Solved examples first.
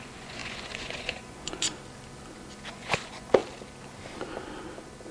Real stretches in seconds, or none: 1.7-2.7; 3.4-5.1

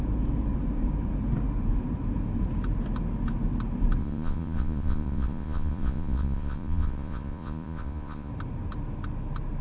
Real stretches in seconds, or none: 0.0-4.0; 8.3-9.6

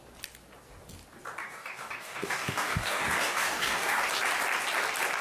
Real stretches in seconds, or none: 0.0-1.4; 4.0-5.2

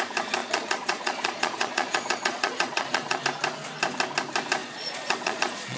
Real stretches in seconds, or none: 0.0-0.4; 3.2-4.6

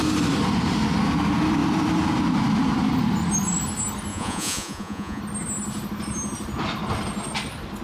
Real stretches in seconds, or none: 0.0-4.1; 5.2-7.8

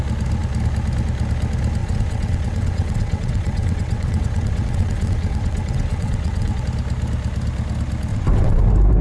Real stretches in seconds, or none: 0.0-1.8; 6.6-8.1; 8.6-9.0

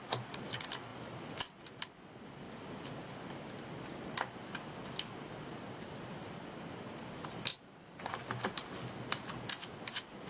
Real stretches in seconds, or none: 0.0-7.5; 8.0-10.3

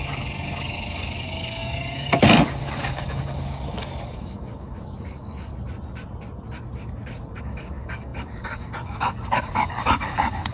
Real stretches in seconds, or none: 5.5-7.4